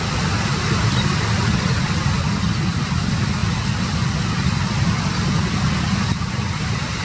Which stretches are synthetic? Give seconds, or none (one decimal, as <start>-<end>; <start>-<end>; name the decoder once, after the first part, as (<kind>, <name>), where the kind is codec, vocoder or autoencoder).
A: none

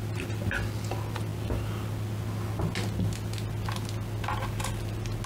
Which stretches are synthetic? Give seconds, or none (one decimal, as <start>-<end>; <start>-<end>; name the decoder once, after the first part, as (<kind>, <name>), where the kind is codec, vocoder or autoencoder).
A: none

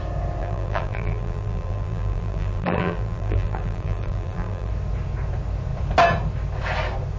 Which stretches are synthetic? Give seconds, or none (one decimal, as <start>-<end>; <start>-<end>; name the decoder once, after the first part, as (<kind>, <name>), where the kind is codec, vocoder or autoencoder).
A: 0.4-4.7 (vocoder, BigVGAN v2)

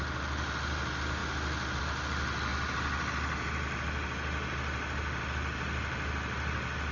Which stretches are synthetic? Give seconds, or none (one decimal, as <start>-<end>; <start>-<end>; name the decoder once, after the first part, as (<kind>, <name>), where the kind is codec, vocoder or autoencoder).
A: none

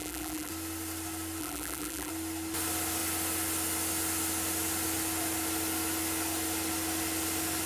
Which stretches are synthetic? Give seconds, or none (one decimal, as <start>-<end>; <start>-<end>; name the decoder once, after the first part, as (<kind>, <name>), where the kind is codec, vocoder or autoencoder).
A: 0.0-0.5 (vocoder, BigVGAN v2); 1.4-2.1

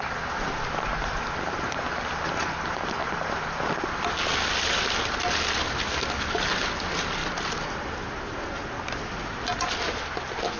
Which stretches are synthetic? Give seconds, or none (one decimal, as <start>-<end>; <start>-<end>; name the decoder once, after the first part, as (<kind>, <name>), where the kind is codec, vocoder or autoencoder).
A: 7.2-8.5 (vocoder, BigVGAN v2)

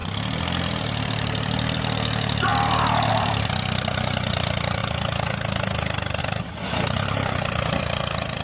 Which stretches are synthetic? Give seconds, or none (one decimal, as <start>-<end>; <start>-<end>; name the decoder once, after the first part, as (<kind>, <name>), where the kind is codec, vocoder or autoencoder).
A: 0.6-2.5 (vocoder, BigVGAN v2); 3.1-4.8; 6.2-8.4

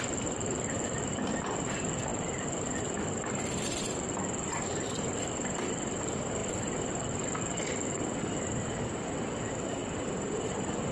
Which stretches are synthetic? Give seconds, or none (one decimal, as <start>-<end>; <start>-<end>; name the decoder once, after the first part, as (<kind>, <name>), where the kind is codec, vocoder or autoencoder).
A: 2.1-6.0 (vocoder, BigVGAN v2); 6.4-6.9; 9.8-10.9